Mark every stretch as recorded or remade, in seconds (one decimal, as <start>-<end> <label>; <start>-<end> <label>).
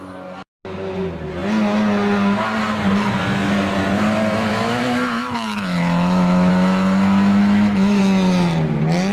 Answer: 0.0-4.5 recorded; 4.5-6.5 remade; 6.5-7.4 recorded; 7.4-8.0 remade; 8.0-9.1 recorded